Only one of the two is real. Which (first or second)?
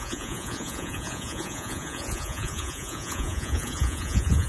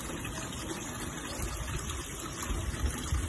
second